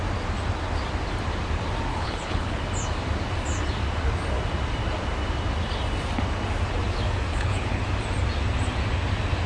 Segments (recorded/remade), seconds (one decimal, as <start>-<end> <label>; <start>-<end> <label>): 0.0-1.9 recorded; 1.9-2.6 remade; 2.6-7.3 recorded; 7.3-7.8 remade; 7.8-9.5 recorded